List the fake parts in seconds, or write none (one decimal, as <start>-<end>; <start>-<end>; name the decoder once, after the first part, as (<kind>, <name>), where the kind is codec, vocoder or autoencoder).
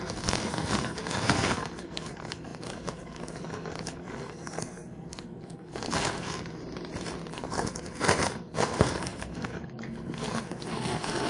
0.0-6.6 (codec, SNAC); 7.3-11.3